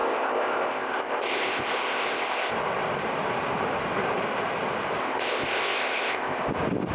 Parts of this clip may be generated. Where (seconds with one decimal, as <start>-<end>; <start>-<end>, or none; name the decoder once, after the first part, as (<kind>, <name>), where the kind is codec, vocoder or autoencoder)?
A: 0.0-2.5 (codec, ZipCodec); 5.0-6.5